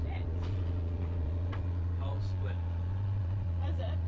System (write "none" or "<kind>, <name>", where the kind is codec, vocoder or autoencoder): vocoder, Vocos